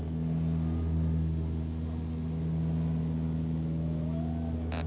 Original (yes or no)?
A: yes